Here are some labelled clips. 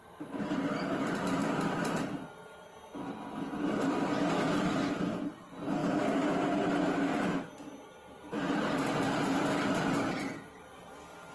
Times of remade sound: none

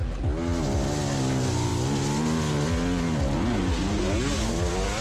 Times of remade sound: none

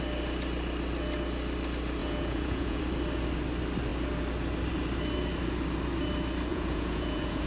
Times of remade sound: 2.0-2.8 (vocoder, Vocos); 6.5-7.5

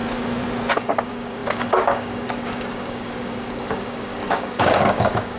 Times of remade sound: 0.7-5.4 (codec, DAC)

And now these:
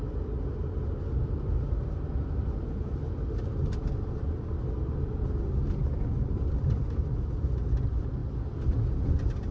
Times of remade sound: none